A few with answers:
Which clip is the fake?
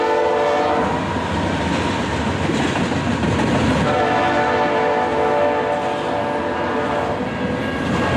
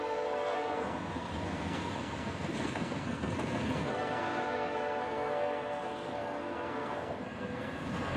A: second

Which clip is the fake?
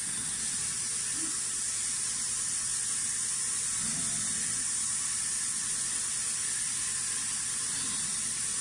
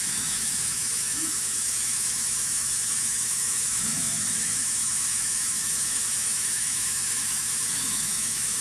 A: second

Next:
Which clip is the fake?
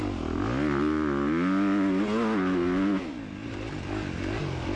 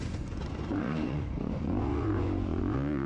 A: second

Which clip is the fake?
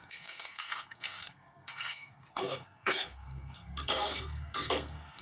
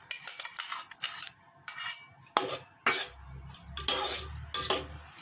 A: first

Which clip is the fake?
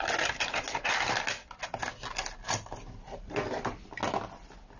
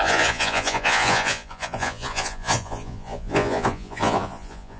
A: second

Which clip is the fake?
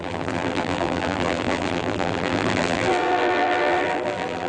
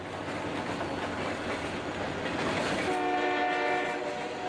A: first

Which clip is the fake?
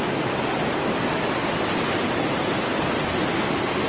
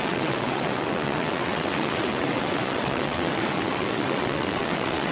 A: second